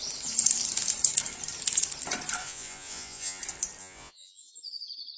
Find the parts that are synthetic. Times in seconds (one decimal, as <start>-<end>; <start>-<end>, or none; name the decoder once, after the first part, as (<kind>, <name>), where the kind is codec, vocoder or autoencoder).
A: 2.4-3.4 (vocoder, Vocos); 3.8-4.5